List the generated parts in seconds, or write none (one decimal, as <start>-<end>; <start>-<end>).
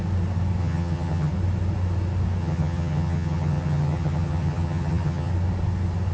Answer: 0.6-1.3; 2.4-5.3